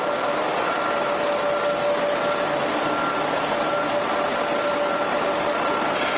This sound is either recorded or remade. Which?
recorded